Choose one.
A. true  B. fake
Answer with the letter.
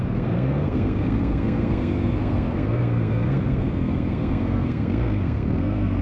B